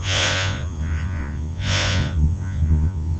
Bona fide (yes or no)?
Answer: no